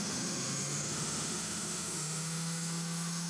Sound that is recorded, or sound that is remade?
remade